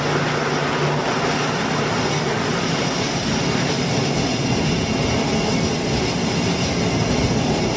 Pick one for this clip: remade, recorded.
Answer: recorded